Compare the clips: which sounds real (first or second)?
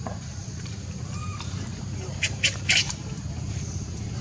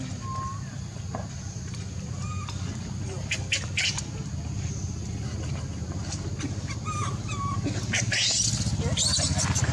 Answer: second